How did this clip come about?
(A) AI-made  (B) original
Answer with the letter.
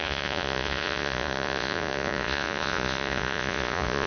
A